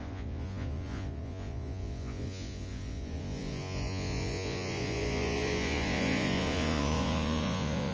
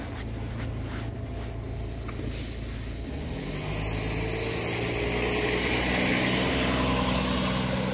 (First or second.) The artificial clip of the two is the first